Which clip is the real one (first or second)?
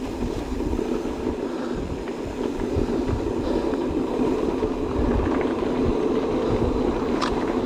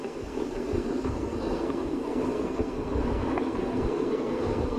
first